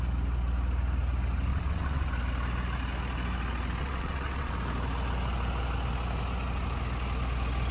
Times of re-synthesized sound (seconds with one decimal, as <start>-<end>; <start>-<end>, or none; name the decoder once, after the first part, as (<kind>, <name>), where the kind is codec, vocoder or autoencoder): 1.5-2.1 (vocoder, WaveNeXt); 3.8-4.5